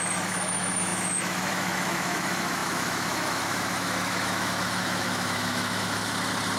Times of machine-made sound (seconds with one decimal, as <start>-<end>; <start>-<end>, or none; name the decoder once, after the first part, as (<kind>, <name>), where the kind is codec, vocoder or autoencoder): 0.0-6.0 (autoencoder, DAC-VAE)